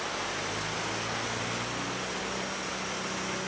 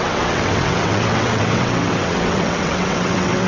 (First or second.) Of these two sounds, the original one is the first